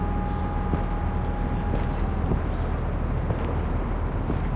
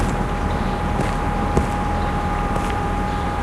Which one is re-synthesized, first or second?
second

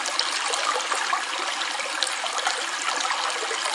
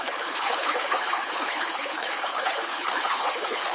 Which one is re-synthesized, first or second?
second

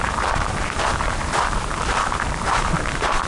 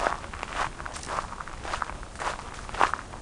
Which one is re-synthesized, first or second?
first